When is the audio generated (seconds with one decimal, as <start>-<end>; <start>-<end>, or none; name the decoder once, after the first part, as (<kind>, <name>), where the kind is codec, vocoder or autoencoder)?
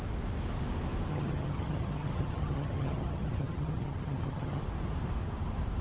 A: 1.1-4.6 (vocoder, HiFi-GAN)